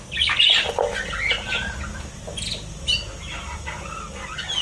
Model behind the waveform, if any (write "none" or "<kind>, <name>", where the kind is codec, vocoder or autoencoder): none